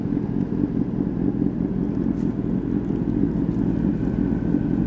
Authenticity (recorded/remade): recorded